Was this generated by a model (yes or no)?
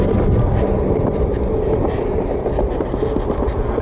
no